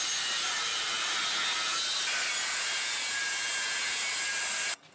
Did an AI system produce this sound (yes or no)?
no